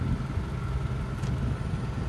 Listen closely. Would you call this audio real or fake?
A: real